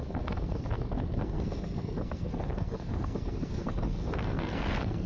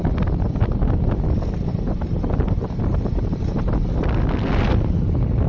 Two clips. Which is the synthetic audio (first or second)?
first